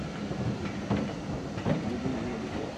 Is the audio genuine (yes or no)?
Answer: yes